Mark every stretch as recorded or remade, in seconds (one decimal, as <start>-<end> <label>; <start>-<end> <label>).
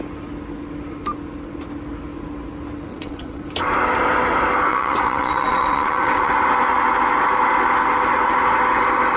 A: 0.0-2.9 recorded; 2.9-3.4 remade; 3.4-4.7 recorded; 4.7-6.3 remade; 6.3-9.2 recorded